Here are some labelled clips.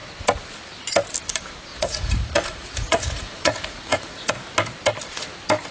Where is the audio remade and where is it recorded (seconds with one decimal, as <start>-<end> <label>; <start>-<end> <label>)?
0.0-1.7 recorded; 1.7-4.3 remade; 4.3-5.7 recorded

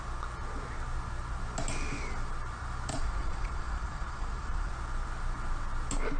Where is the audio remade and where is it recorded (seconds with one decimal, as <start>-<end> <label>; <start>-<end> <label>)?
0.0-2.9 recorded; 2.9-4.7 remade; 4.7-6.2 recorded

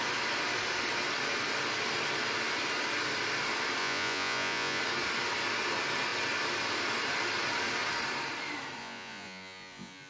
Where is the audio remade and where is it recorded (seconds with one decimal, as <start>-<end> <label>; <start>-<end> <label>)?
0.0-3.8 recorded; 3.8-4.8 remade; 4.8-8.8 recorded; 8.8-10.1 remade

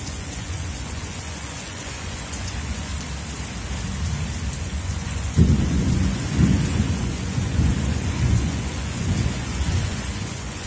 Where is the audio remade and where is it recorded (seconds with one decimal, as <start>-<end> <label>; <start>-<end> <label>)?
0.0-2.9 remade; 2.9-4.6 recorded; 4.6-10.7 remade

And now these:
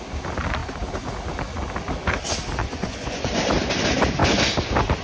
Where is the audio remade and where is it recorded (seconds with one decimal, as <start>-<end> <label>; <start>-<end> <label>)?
0.0-2.6 recorded; 2.6-3.3 remade; 3.3-5.0 recorded